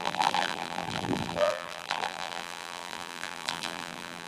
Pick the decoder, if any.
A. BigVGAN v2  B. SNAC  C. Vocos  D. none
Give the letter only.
A